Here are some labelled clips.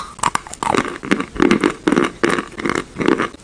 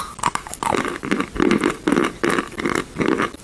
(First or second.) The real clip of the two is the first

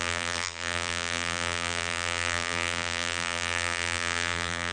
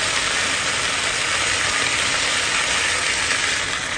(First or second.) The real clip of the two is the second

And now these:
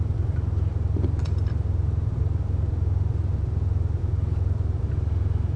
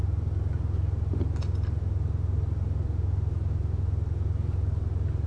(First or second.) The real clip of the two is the second